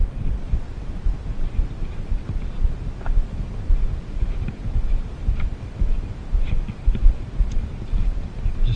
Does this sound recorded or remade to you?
remade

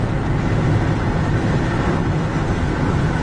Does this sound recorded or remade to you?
recorded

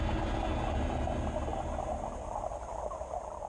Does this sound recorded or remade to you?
recorded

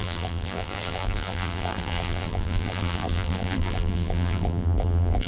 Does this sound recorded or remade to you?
remade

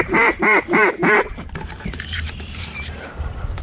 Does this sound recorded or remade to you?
remade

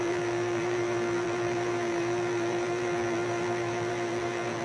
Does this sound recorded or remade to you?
remade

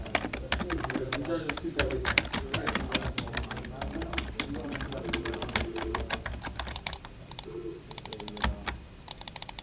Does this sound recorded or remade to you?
remade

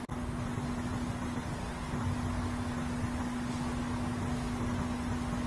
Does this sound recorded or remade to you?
recorded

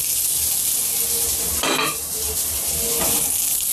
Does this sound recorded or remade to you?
recorded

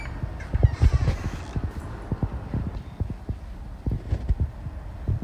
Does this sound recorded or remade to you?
recorded